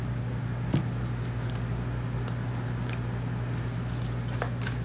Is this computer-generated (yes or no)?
no